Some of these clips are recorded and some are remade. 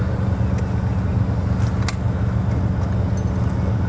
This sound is recorded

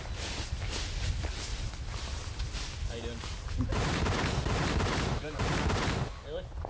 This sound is recorded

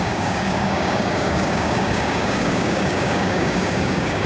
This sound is remade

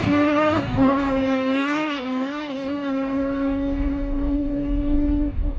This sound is remade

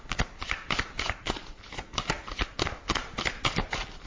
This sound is recorded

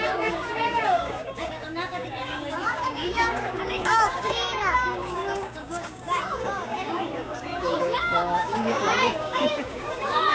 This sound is remade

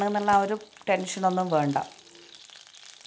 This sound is recorded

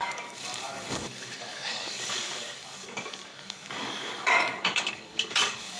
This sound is remade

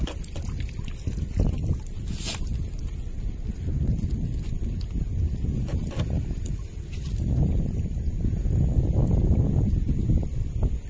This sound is recorded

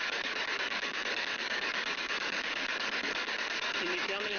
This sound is remade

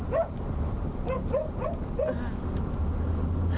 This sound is recorded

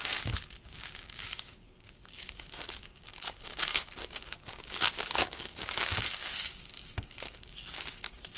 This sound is remade